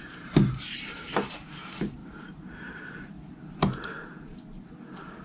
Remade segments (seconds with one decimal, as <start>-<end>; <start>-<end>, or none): 0.0-2.0